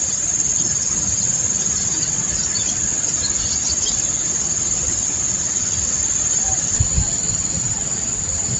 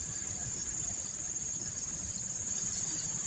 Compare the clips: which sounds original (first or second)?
first